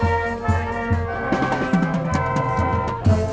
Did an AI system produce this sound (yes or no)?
no